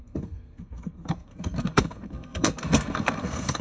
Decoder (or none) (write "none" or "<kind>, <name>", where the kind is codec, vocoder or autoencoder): codec, SNAC